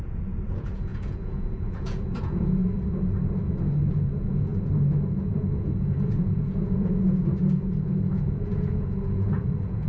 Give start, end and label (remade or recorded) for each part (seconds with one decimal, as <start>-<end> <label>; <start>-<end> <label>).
0.0-2.6 remade; 2.6-3.4 recorded; 3.4-4.5 remade; 4.5-5.2 recorded; 5.2-9.9 remade